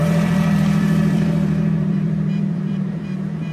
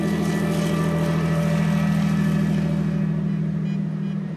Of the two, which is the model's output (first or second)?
first